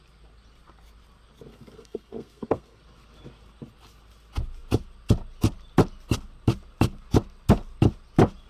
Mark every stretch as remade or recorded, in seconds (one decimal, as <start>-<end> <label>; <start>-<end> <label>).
0.0-1.5 recorded; 1.5-2.8 remade; 2.8-8.5 recorded